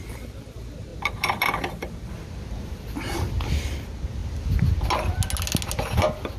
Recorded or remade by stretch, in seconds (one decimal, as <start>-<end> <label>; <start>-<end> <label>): 0.0-0.9 recorded; 0.9-2.7 remade; 2.7-6.4 recorded